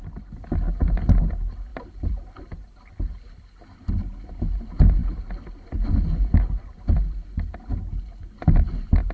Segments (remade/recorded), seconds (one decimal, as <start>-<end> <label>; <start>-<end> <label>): 0.0-9.1 recorded